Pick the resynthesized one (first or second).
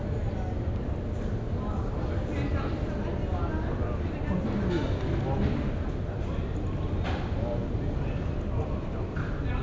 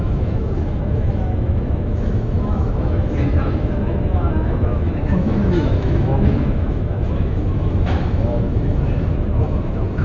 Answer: second